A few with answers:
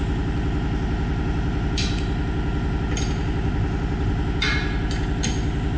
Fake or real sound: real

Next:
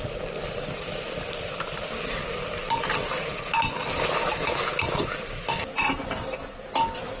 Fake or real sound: real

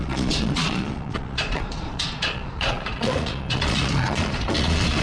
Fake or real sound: fake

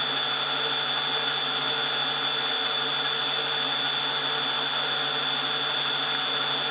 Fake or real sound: real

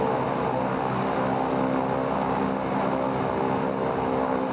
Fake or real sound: real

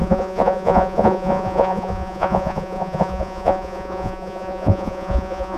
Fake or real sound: fake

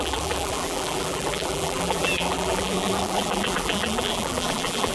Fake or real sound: fake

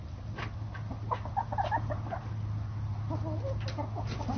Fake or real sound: real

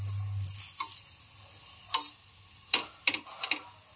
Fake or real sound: real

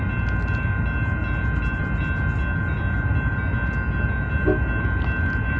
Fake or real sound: real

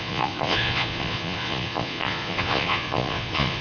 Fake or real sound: fake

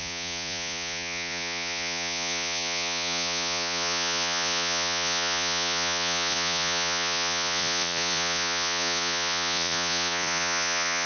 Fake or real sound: fake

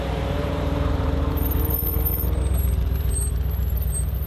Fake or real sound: fake